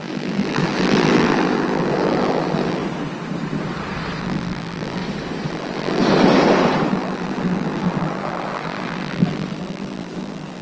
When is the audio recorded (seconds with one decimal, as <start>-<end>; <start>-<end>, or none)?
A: 2.8-4.2; 5.0-5.5; 6.0-6.9